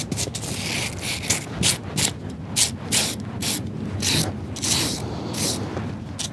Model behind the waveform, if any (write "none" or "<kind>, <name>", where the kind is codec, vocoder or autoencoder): none